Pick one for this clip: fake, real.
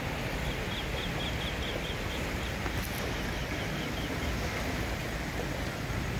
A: real